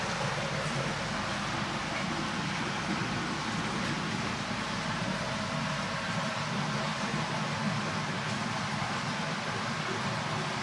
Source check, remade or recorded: recorded